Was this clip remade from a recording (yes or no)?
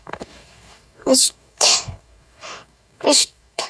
yes